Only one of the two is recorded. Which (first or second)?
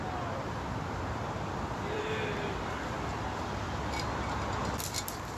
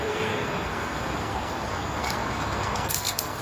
first